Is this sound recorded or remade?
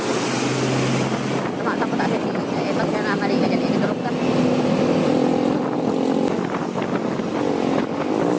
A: recorded